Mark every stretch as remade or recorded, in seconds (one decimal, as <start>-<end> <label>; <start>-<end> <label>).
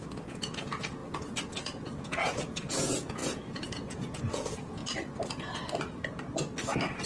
0.0-1.0 remade; 1.0-1.5 recorded; 1.5-4.8 remade; 4.8-7.1 recorded